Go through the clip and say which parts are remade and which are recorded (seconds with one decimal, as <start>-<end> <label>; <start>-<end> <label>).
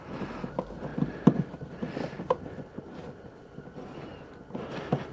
0.0-5.1 recorded